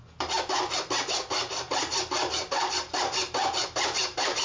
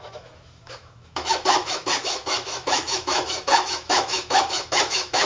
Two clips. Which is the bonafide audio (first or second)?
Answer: first